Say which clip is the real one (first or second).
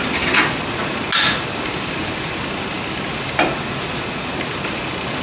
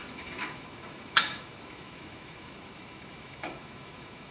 first